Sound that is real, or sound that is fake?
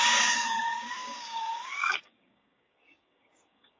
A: fake